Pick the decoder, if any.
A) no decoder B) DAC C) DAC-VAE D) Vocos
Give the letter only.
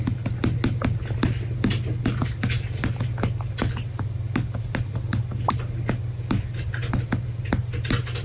A